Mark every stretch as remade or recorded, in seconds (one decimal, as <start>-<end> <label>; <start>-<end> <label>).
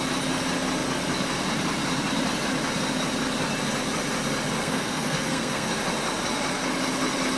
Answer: 0.0-4.6 recorded; 4.6-5.7 remade; 5.7-7.4 recorded